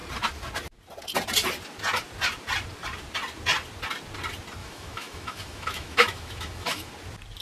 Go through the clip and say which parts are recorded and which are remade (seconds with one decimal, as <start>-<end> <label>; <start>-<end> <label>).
0.0-4.6 recorded; 4.6-6.9 remade; 6.9-7.4 recorded